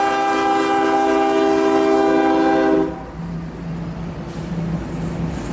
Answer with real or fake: real